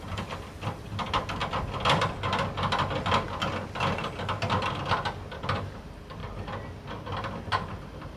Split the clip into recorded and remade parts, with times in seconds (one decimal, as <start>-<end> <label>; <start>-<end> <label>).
0.0-1.4 remade; 1.4-5.4 recorded; 5.4-6.2 remade; 6.2-7.5 recorded; 7.5-8.2 remade